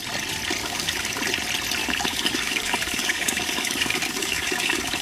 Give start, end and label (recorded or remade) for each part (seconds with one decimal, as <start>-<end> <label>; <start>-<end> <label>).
0.0-0.6 recorded; 0.6-1.2 remade; 1.2-1.8 recorded; 1.8-5.0 remade